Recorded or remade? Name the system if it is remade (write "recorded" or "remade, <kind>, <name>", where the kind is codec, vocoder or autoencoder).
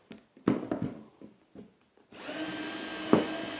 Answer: recorded